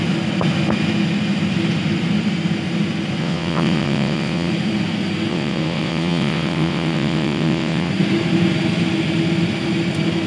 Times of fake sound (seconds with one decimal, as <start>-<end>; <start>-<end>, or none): 3.2-4.5; 5.3-7.9